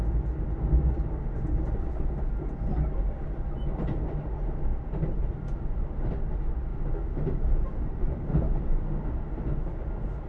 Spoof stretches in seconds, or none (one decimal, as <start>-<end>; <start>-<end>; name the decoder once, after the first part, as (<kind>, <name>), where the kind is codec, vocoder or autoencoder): 4.7-6.1 (vocoder, BigVGAN v2); 6.7-8.3

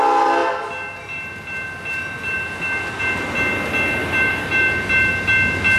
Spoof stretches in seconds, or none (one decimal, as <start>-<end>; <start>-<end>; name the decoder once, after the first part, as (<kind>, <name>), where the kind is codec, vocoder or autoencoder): 4.0-5.3 (vocoder, BigVGAN v2)

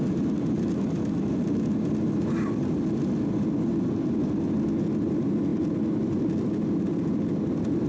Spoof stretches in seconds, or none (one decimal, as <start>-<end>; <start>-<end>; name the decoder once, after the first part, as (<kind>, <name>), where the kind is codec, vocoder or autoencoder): none

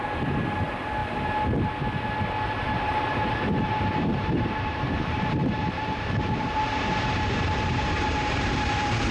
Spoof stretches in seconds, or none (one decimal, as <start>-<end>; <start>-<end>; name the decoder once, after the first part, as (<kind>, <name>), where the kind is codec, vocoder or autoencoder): 0.0-1.0 (vocoder, BigVGAN v2); 2.5-9.1